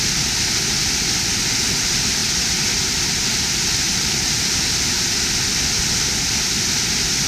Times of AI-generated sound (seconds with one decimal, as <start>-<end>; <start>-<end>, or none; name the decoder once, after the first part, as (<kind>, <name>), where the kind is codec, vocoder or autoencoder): none